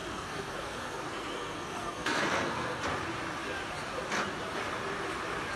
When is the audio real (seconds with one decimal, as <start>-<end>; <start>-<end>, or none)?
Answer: 2.8-5.6